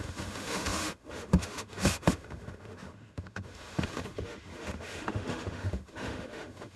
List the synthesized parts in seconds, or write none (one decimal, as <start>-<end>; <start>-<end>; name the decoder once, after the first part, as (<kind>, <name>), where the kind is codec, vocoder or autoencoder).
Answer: 0.0-6.8 (autoencoder, DAC-VAE)